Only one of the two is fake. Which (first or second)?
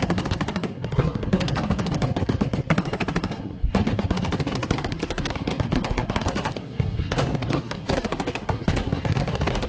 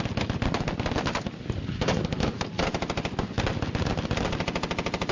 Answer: first